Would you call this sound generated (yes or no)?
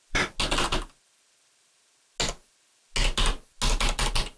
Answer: no